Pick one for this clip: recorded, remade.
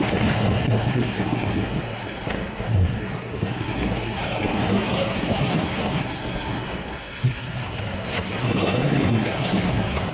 remade